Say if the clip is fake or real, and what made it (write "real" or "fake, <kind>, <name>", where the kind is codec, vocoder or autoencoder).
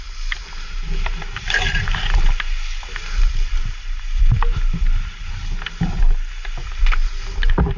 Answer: real